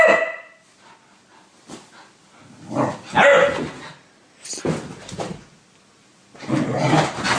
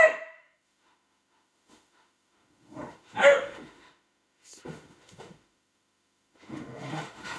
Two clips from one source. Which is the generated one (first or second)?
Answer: second